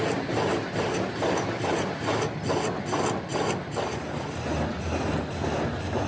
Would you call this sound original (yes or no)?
yes